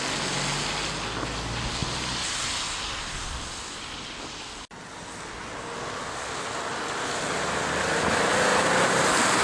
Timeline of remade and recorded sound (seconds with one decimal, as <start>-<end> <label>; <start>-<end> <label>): 0.0-9.4 recorded